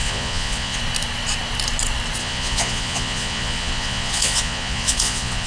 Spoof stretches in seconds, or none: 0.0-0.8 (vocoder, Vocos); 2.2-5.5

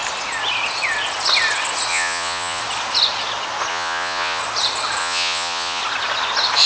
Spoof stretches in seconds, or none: 1.9-2.6 (vocoder, Vocos); 3.7-4.4; 5.0-5.8

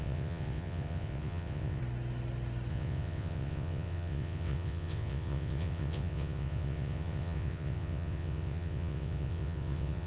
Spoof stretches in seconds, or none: 0.0-1.8 (vocoder, WaveNeXt); 2.7-10.1

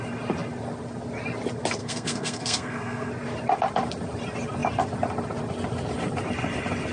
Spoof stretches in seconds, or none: 1.8-3.1 (codec, SNAC)

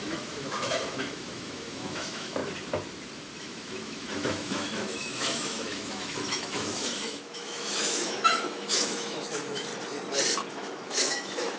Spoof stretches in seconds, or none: 0.0-2.4 (autoencoder, DAC-VAE); 3.4-9.7; 10.5-11.6

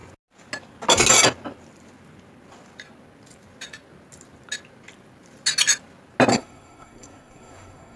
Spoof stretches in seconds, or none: 6.3-8.0 (codec, SNAC)

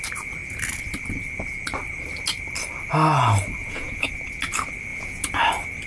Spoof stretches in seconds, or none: 3.6-4.1 (vocoder, Vocos); 4.9-5.4

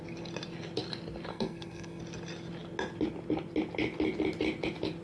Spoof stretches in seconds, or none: 1.3-2.0 (codec, SNAC)